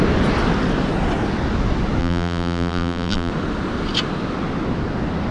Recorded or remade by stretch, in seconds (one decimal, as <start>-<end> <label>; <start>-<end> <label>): 0.0-2.0 recorded; 2.0-3.3 remade; 3.3-5.3 recorded